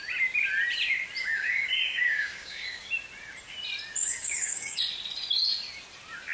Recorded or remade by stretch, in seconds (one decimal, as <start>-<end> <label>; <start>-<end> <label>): 0.0-1.2 recorded; 1.2-2.9 remade; 2.9-4.0 recorded; 4.0-4.8 remade; 4.8-6.3 recorded